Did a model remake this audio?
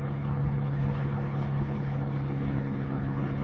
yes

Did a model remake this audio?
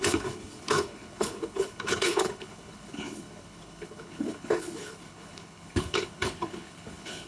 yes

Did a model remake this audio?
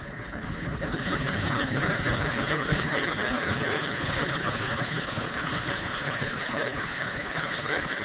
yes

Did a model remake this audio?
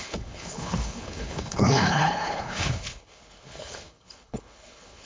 yes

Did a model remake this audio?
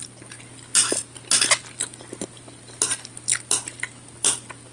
no